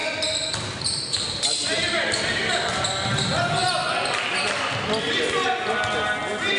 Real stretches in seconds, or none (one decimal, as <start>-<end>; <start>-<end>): 2.9-3.6; 5.7-6.6